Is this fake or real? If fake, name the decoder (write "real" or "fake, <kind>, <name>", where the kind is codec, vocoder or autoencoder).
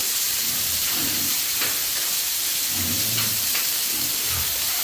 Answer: fake, vocoder, BigVGAN v2